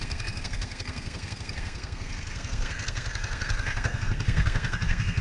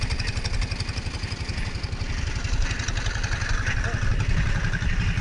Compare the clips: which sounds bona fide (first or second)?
second